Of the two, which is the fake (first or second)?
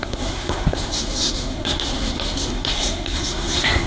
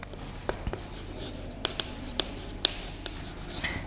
first